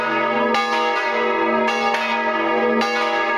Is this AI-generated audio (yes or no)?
no